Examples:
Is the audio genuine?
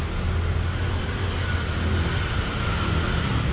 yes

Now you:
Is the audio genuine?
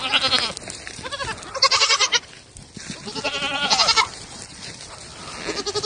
yes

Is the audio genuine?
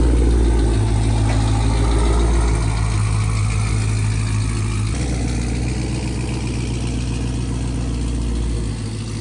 yes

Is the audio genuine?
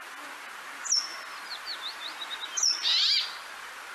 yes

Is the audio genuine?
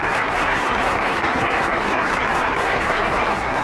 no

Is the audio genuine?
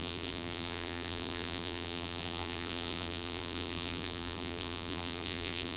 no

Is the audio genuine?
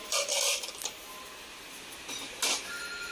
yes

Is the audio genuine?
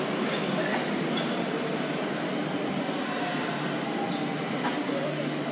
yes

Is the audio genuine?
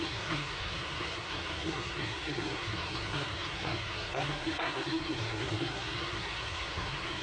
no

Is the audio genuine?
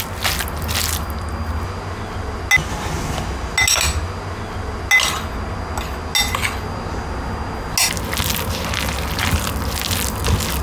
yes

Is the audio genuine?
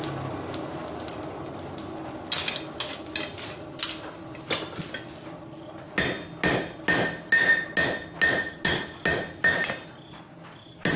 yes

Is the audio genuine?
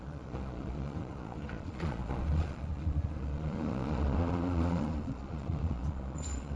no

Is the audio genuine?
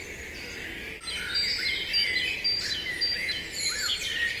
yes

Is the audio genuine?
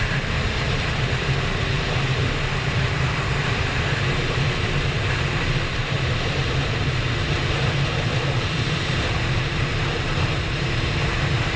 no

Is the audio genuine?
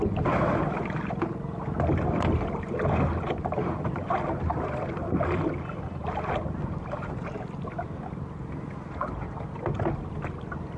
yes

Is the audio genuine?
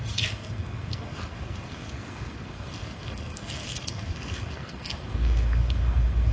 no